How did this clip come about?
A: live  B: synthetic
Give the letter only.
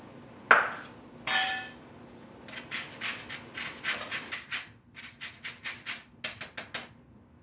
A